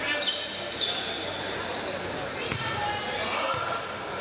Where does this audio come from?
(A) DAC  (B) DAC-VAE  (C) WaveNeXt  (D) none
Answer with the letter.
D